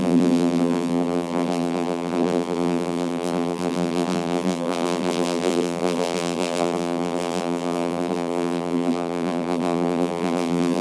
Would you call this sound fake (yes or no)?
yes